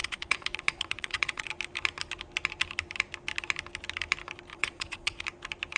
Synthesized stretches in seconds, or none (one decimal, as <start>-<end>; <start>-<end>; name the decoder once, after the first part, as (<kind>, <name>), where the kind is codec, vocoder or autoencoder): 0.0-1.5 (vocoder, Vocos); 4.5-5.2